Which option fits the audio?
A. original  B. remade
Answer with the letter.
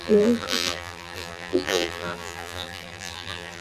B